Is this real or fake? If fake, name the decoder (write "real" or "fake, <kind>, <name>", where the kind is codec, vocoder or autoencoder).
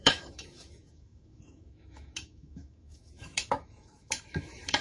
fake, autoencoder, DAC-VAE